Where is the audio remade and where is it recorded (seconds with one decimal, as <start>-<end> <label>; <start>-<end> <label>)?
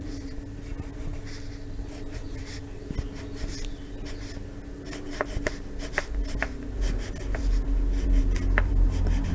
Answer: 0.0-9.3 recorded